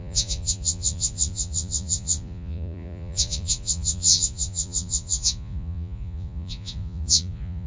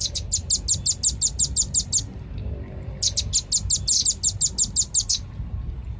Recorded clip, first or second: second